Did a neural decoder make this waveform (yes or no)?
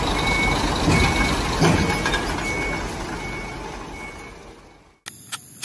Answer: no